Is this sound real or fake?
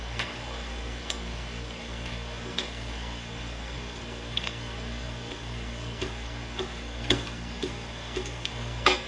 fake